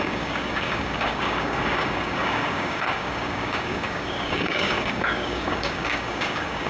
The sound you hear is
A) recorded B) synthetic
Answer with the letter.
B